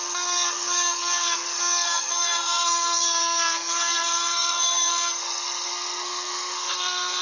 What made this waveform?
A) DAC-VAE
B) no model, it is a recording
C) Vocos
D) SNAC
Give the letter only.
D